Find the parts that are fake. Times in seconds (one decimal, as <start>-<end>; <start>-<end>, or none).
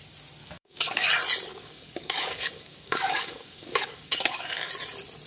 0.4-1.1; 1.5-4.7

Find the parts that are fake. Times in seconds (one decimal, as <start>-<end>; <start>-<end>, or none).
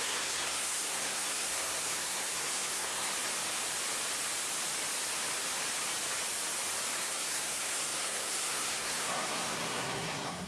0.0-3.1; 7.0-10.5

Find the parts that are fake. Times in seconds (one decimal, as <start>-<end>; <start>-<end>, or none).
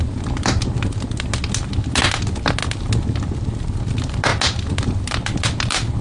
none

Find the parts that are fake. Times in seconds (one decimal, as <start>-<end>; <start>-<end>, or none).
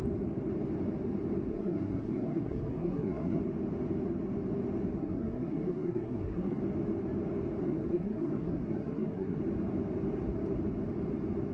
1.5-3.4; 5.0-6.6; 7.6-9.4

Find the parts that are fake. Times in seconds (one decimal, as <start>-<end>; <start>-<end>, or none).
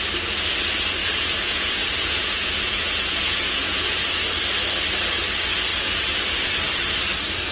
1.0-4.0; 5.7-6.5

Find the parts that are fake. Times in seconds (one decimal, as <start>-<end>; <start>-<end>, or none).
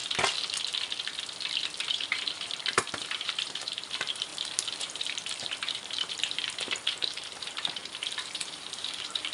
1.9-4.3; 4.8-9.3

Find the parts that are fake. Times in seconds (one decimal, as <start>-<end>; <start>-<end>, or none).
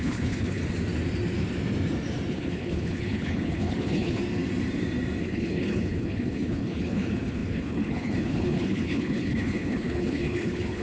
0.0-0.6; 2.3-4.2; 5.2-10.8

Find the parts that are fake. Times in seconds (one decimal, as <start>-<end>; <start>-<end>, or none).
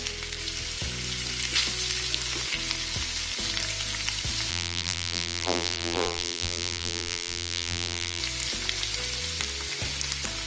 4.5-8.2